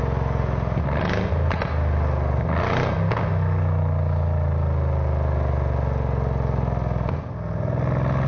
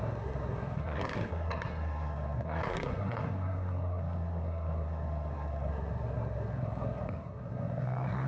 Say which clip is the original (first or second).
first